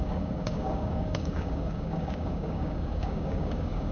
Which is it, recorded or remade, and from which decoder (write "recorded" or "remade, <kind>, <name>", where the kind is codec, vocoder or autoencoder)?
remade, codec, DAC